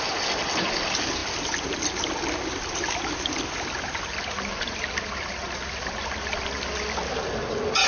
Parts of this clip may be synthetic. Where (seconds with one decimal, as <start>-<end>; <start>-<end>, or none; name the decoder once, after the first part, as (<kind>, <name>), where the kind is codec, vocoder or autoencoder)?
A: none